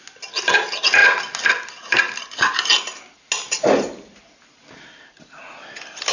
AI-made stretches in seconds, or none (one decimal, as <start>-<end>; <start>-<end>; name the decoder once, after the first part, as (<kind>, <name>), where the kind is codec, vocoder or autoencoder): none